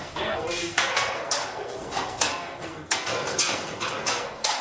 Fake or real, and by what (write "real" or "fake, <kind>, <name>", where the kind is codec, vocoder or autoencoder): fake, codec, SNAC